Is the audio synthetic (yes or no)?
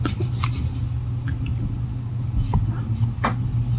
no